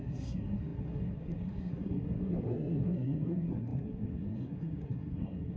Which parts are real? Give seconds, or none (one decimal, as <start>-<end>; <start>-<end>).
none